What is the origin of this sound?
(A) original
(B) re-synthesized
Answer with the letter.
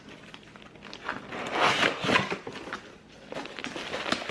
A